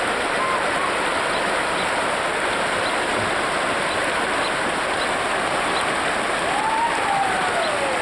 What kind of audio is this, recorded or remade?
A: recorded